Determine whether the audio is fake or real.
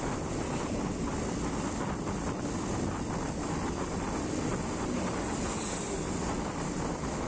real